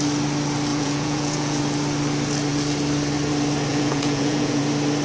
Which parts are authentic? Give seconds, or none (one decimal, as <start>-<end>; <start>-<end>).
0.0-0.7; 1.6-3.7; 4.6-5.0